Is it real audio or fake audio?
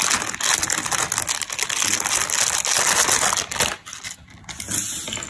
real